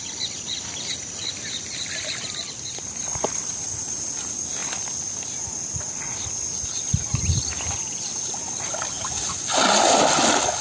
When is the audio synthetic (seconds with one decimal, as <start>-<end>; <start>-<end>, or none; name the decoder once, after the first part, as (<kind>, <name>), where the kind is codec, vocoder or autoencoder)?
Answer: 3.1-3.7 (vocoder, BigVGAN v2)